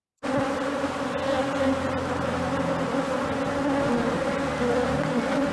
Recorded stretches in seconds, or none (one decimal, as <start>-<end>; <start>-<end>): 0.0-5.5